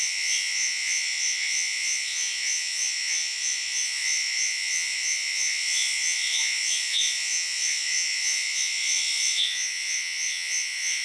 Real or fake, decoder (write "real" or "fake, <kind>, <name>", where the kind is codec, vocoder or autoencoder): fake, vocoder, Vocos